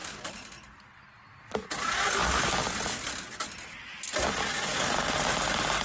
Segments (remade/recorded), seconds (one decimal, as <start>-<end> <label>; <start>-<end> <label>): 0.0-5.8 recorded